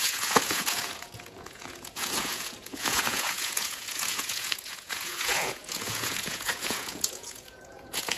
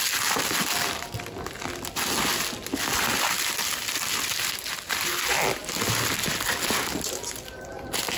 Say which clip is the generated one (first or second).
first